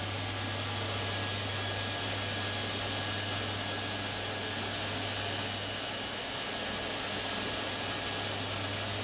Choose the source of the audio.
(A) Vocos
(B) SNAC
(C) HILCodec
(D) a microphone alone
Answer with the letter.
D